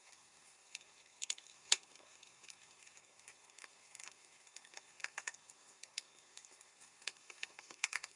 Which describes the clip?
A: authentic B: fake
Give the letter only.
B